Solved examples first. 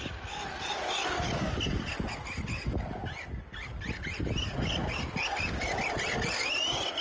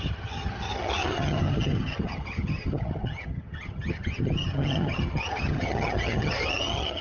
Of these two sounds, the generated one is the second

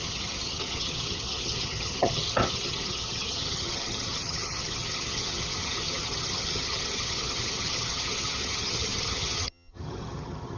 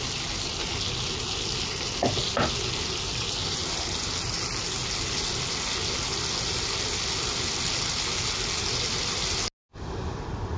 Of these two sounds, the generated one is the first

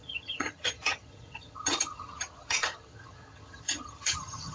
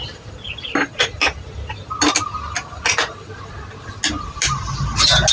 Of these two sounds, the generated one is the first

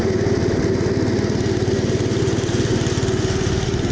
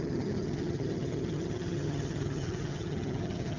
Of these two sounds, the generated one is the second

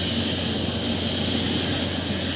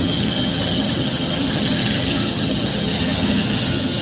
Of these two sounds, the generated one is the second